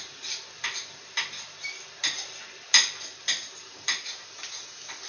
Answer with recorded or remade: remade